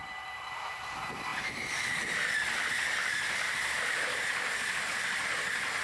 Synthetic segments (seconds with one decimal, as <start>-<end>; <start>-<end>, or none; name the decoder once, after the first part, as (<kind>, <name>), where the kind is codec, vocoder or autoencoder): none